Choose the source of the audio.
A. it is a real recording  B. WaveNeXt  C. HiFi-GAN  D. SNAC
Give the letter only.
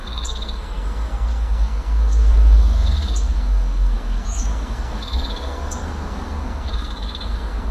D